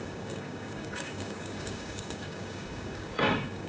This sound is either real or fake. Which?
fake